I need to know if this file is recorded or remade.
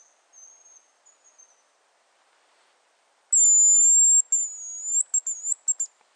recorded